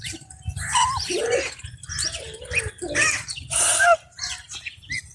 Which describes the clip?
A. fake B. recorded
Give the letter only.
B